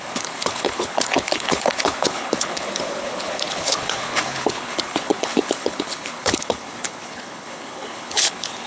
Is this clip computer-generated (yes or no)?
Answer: yes